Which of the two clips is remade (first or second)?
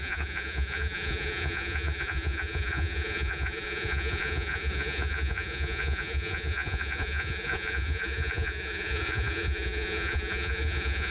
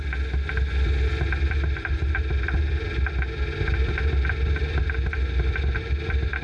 first